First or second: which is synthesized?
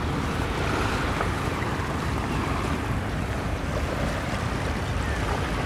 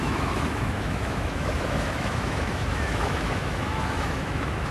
second